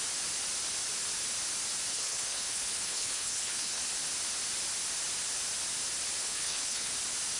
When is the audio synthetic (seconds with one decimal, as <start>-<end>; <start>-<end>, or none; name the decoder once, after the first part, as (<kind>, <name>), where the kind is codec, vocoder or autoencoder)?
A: 1.9-3.8 (codec, HILCodec); 6.2-6.9